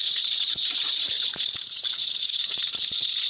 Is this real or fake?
fake